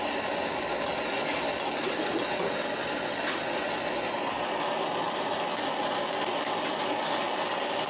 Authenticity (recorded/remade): recorded